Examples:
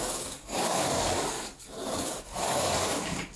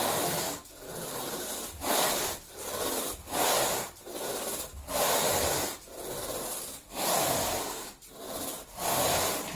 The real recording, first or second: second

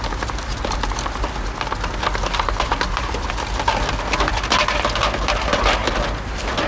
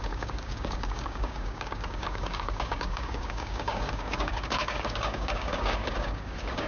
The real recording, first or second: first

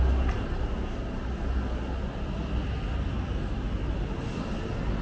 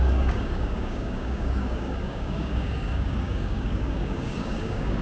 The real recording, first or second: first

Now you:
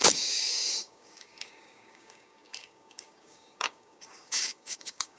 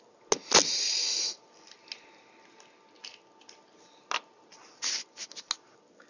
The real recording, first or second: second